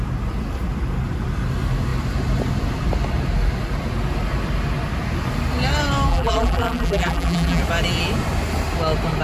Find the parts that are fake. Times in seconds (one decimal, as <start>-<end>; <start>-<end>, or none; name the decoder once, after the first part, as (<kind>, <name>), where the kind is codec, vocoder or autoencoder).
6.1-7.6 (vocoder, BigVGAN v2)

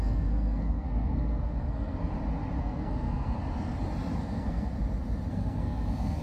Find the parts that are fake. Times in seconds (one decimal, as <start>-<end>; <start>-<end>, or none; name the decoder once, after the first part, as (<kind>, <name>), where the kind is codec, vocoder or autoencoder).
0.0-2.0 (codec, SNAC); 2.6-3.4; 4.2-4.7; 5.3-6.2

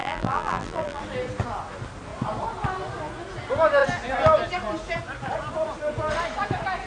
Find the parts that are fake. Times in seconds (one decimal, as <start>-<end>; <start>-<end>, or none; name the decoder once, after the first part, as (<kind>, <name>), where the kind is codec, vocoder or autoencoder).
0.0-1.0 (vocoder, BigVGAN v2)

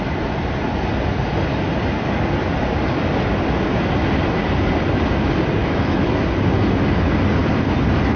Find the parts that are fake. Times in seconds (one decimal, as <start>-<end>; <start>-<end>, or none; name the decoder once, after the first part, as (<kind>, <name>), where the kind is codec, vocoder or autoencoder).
5.6-6.2 (autoencoder, DAC-VAE)